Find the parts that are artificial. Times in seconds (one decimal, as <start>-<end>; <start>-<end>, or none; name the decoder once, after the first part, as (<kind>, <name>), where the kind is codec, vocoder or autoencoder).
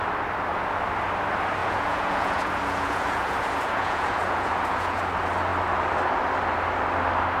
1.6-5.0 (vocoder, Vocos)